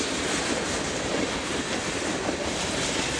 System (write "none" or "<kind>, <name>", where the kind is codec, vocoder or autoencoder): none